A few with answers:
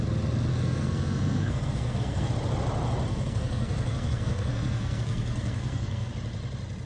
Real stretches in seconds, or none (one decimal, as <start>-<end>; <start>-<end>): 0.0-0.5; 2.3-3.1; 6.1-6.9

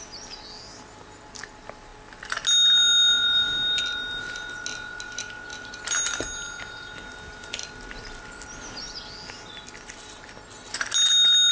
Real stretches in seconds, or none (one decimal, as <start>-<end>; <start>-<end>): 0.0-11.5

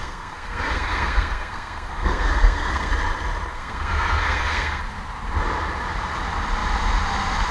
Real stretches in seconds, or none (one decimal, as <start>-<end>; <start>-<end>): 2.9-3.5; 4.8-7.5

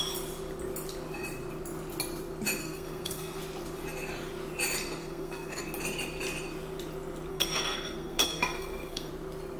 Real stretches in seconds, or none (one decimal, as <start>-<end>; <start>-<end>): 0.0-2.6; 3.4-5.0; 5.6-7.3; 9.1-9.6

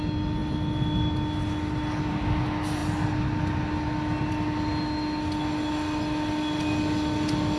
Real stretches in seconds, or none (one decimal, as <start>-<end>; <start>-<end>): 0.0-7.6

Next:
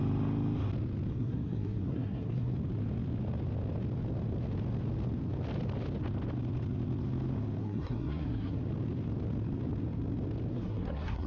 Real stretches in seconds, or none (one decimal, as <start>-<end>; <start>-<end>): 0.0-1.1; 2.5-7.6; 8.6-10.5

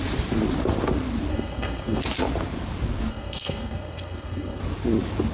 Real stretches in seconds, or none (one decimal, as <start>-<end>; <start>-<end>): 0.0-1.3; 2.0-3.1; 4.6-5.3